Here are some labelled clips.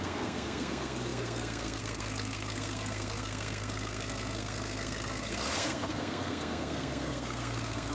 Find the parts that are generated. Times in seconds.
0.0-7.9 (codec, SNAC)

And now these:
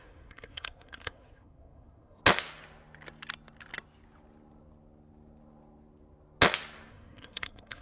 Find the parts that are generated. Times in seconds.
0.0-2.2 (codec, SNAC); 6.9-7.8

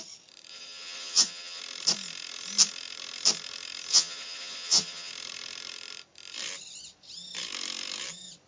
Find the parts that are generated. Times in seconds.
0.5-1.6 (vocoder, HiFi-GAN); 3.9-5.1

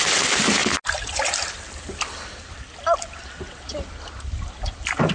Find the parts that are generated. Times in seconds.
none

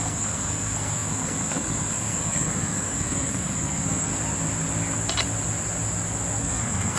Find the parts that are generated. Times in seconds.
0.0-4.1 (codec, SNAC); 6.4-7.0

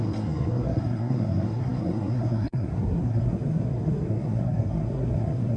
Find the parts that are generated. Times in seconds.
0.0-5.6 (codec, SNAC)

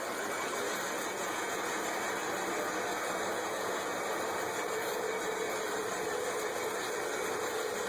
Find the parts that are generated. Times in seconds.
1.1-1.8 (vocoder, Vocos); 3.3-3.9

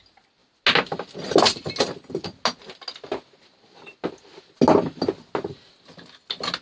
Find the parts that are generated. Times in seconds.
none